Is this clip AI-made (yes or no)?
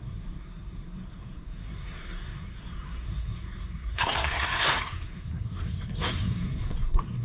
yes